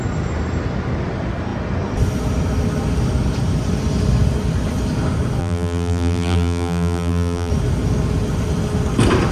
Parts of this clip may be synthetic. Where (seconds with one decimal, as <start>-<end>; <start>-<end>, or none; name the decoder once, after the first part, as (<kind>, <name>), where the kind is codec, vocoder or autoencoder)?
5.4-7.5 (vocoder, BigVGAN v2)